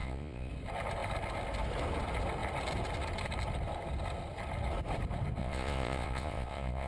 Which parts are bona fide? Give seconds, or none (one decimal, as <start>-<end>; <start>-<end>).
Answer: 0.5-5.4